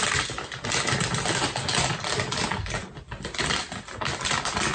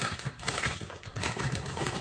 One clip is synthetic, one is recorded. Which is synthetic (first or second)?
second